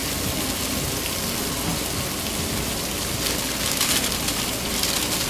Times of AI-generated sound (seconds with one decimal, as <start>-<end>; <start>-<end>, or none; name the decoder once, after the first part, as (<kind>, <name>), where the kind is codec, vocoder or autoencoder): none